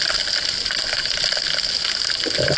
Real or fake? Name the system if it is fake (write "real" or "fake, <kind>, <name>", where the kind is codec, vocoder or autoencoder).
real